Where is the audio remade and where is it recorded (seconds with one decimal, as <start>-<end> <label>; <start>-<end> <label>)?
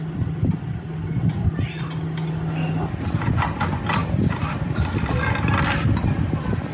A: 0.0-4.0 recorded; 4.0-5.1 remade; 5.1-6.7 recorded